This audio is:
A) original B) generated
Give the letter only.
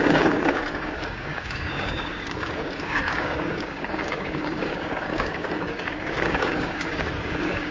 B